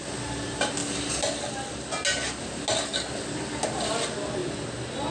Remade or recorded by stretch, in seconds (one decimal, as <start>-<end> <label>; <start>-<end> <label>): 0.0-5.1 recorded